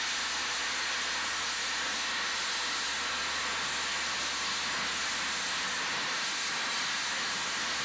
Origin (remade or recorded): recorded